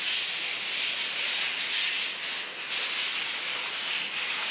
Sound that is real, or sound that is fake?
real